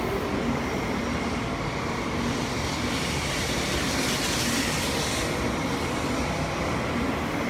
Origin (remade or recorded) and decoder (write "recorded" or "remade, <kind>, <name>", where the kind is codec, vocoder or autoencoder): recorded